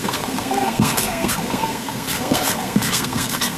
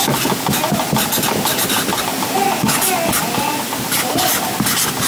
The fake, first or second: first